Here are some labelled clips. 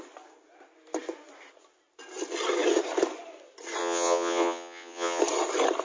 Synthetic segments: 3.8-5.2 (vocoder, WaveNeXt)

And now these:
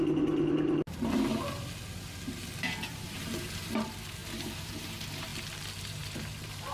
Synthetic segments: 0.0-1.3 (vocoder, BigVGAN v2); 2.9-5.3; 5.8-6.7

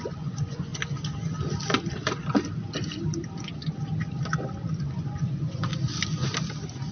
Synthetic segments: 0.0-0.7 (vocoder, Vocos); 4.8-5.7

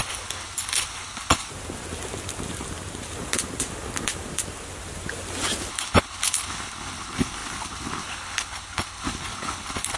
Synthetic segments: 0.0-1.5 (codec, HILCodec); 5.7-10.0

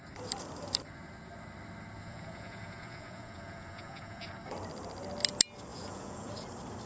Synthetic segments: 2.0-4.3 (vocoder, Vocos); 5.7-6.3